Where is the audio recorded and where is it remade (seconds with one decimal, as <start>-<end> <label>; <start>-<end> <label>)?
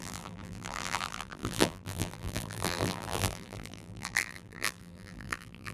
0.0-5.7 remade